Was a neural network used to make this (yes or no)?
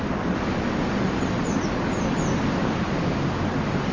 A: no